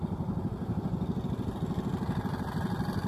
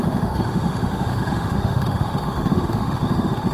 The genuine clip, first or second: first